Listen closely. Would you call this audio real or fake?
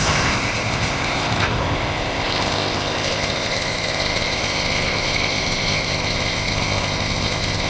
fake